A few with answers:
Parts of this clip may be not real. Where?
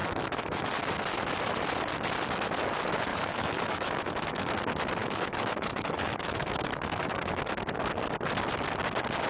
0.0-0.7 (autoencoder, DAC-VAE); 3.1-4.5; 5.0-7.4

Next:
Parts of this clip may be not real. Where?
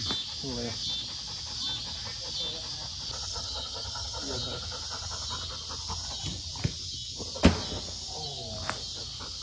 3.3-4.2 (vocoder, HiFi-GAN)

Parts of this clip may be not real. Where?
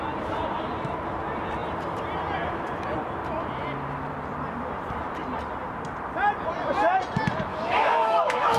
7.5-8.6 (autoencoder, DAC-VAE)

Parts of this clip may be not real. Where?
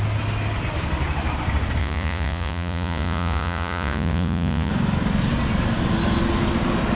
1.8-4.7 (vocoder, Vocos)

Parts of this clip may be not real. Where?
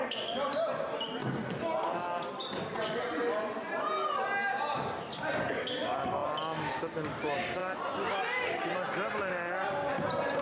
none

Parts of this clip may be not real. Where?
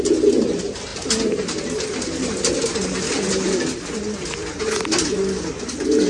none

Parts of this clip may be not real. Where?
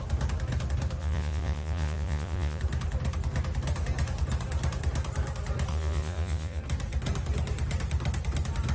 1.0-2.6 (vocoder, Vocos); 5.7-6.6